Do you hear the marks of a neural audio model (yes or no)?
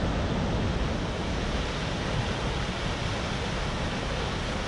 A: no